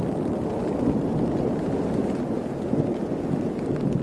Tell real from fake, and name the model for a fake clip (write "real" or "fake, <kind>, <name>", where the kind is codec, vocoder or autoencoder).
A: real